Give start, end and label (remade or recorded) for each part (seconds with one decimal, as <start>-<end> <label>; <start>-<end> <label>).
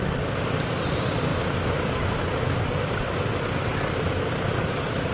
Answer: 0.0-5.1 recorded